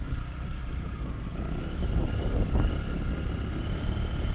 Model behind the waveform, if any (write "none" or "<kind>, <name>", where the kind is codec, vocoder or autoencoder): none